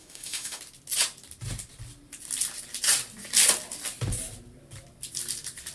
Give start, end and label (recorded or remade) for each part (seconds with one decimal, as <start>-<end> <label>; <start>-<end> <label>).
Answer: 0.0-0.6 remade; 0.6-5.7 recorded